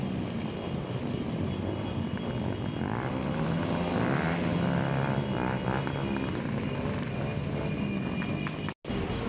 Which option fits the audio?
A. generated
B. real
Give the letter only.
B